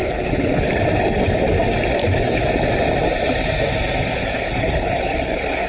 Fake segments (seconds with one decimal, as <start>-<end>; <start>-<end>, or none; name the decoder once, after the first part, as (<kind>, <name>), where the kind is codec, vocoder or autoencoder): 0.0-0.7 (codec, HILCodec); 2.0-2.5; 4.2-5.7